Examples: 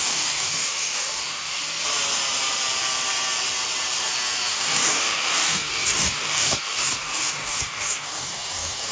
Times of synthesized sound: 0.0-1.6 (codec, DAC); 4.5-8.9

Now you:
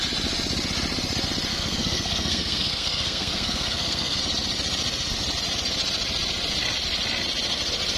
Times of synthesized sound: 1.5-4.2 (codec, SNAC)